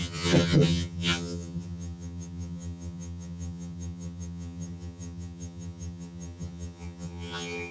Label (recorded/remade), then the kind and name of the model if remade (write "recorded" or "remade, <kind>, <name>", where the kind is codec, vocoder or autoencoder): remade, vocoder, HiFi-GAN